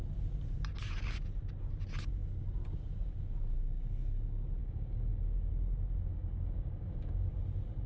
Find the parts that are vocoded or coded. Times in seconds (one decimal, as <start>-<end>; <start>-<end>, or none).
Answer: 4.6-5.5; 6.1-7.4